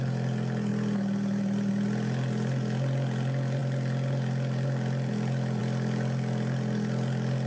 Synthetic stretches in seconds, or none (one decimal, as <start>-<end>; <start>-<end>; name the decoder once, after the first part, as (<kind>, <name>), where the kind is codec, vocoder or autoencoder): none